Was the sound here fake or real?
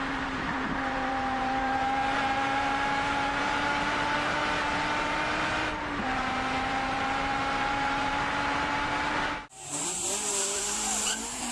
fake